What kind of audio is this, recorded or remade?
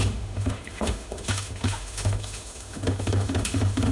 remade